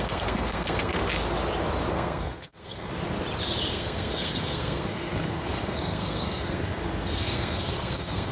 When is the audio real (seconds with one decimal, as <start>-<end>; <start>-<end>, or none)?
1.0-1.9; 2.9-3.7

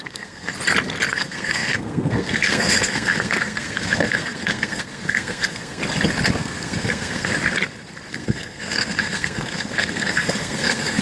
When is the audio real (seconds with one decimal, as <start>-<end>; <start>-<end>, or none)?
0.5-1.1; 5.8-6.4; 7.3-8.1

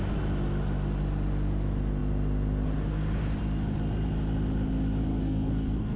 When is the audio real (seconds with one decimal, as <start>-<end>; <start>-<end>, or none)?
0.0-5.1

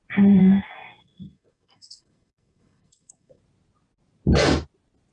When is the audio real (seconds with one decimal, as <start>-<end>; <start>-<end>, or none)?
0.0-0.4; 3.4-5.1

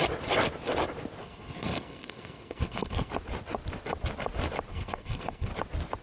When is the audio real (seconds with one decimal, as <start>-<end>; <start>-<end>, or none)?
0.0-1.2; 3.1-4.7; 5.5-6.0